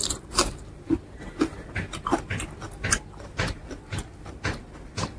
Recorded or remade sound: recorded